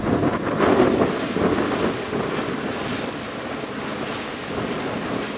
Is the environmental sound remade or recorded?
recorded